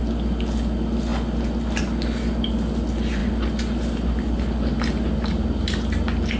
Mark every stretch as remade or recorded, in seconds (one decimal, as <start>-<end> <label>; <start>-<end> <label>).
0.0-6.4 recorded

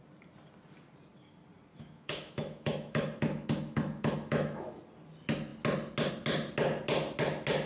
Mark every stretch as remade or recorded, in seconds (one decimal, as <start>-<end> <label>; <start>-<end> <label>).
0.0-1.7 recorded; 1.7-4.8 remade; 4.8-7.7 recorded

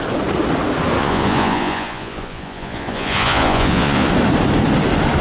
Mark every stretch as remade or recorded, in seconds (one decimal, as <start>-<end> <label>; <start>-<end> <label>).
0.0-1.0 recorded; 1.0-4.1 remade; 4.1-5.2 recorded